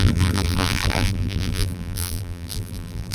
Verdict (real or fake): fake